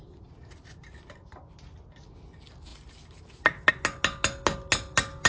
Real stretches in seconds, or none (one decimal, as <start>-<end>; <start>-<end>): 0.0-5.3